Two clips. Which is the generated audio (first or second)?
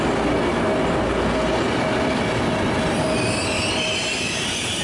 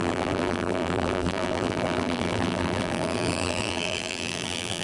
second